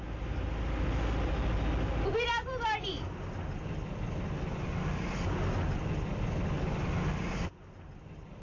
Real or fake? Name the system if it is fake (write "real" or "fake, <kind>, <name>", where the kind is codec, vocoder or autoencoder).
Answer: real